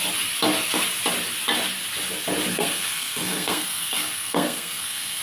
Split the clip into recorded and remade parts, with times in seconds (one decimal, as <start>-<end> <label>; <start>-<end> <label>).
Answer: 0.0-2.5 recorded; 2.5-5.2 remade